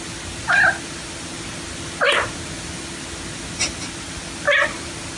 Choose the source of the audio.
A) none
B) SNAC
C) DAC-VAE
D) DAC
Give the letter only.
A